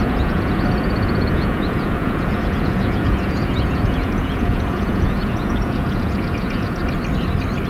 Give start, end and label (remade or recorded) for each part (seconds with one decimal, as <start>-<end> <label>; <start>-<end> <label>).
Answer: 0.0-6.8 remade; 6.8-7.7 recorded